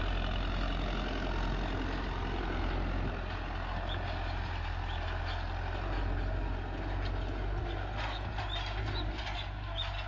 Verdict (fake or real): real